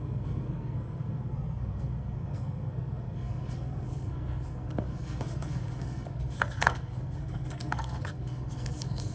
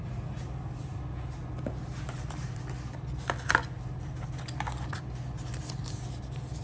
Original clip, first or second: second